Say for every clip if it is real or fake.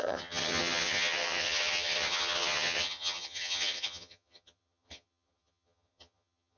fake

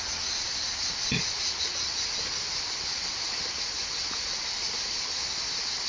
real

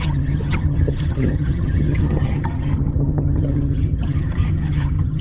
fake